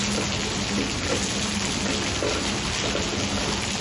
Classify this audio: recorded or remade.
recorded